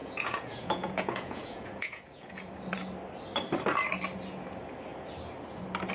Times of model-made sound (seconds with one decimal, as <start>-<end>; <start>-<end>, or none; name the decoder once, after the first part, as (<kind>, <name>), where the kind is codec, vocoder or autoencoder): 0.0-2.4 (vocoder, Vocos)